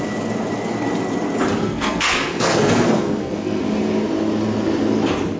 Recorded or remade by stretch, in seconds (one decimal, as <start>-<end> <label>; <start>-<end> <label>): 0.0-1.6 recorded; 1.6-3.6 remade; 3.6-5.4 recorded